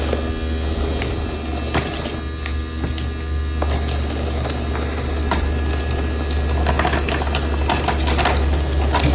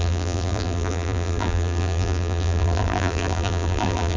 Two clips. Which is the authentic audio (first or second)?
first